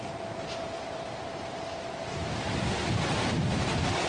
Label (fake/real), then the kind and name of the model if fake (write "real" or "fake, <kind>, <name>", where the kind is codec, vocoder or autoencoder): fake, vocoder, BigVGAN v2